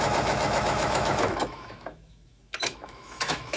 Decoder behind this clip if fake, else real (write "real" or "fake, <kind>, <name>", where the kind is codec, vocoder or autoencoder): fake, autoencoder, DAC-VAE